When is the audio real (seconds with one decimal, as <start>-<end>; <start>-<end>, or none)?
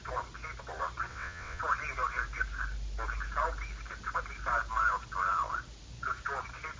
0.0-1.1; 1.6-6.8